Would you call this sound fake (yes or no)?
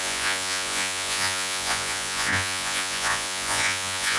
yes